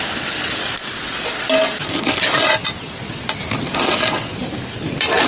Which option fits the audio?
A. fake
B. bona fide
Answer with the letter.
B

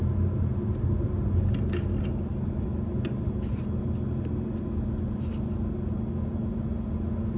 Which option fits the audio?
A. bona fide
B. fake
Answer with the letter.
A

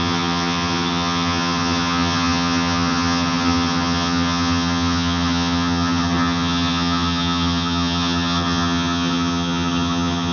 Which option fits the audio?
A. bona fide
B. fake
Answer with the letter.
B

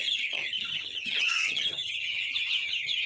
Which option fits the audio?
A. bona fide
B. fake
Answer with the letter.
B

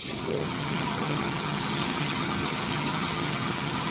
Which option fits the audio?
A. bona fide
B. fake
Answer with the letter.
B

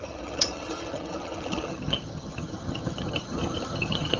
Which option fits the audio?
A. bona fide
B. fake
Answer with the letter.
B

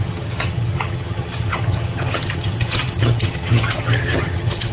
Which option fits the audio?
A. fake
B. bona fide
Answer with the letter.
A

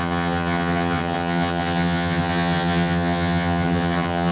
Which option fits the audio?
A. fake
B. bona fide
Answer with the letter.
A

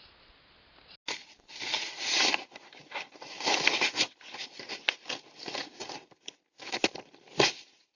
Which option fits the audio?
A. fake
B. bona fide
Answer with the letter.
B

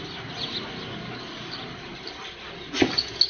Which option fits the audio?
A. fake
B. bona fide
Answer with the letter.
B